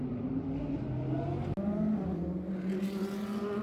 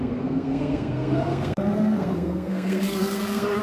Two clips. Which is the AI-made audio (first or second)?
second